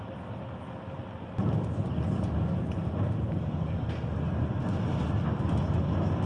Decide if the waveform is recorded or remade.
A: recorded